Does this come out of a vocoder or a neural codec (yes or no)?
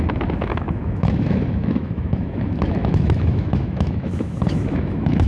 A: yes